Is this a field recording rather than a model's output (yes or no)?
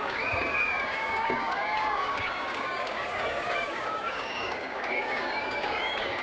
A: no